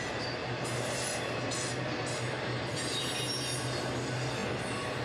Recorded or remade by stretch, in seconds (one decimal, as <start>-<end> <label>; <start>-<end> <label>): 0.0-0.4 recorded; 0.4-0.9 remade; 0.9-5.0 recorded